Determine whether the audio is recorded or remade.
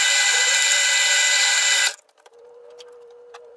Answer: remade